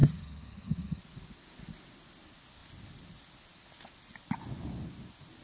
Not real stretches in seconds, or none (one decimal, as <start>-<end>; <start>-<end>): 0.0-1.0